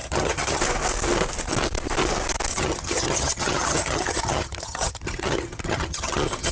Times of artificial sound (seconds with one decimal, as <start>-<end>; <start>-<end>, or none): 0.0-0.6; 2.5-6.5